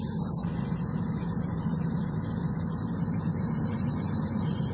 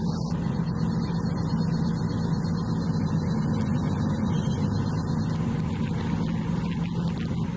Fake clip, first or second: first